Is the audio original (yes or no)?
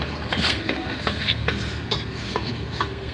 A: no